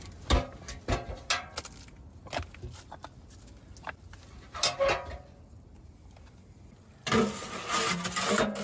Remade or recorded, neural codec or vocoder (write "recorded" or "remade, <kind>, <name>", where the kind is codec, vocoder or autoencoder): recorded